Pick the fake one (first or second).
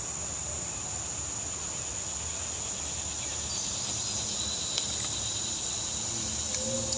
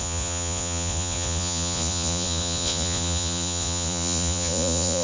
second